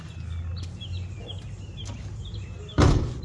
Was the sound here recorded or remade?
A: recorded